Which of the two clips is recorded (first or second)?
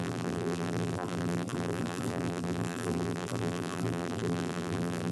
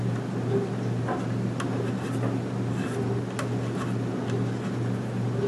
second